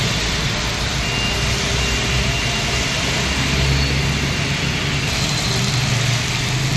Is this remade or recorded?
recorded